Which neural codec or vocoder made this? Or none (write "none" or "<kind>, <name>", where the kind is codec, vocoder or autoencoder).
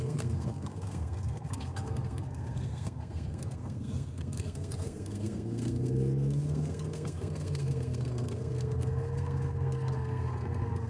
codec, SNAC